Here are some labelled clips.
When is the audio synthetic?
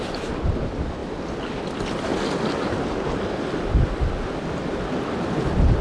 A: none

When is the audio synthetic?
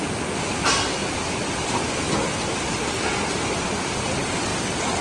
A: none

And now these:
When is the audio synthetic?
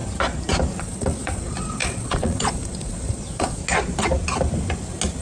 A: 0.8-3.6 (vocoder, Vocos)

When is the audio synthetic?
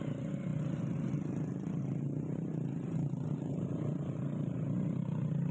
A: none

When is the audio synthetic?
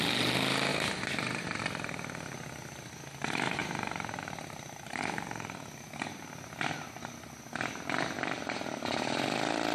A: 0.7-1.6 (vocoder, BigVGAN v2)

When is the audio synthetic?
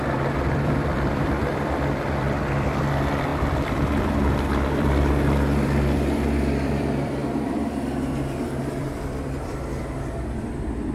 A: 0.0-10.9 (vocoder, BigVGAN v2)